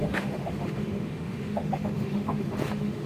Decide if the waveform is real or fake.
fake